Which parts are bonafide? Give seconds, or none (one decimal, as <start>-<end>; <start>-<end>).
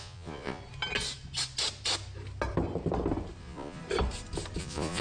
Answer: 0.6-3.4; 3.8-4.6